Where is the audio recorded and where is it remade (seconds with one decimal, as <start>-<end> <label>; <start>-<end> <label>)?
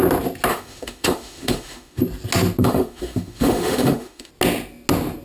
0.0-0.5 recorded; 0.5-2.0 remade; 2.0-2.6 recorded; 2.6-4.3 remade; 4.3-5.2 recorded